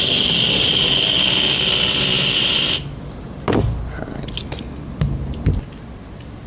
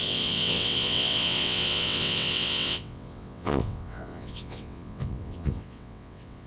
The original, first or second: first